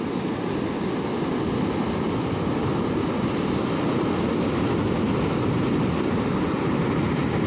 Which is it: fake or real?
real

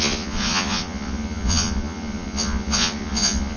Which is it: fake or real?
fake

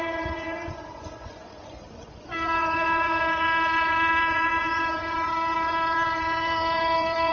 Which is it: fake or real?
fake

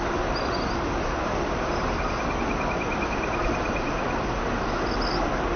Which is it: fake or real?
real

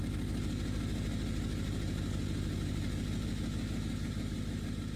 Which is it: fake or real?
real